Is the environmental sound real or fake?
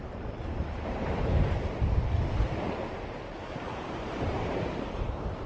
fake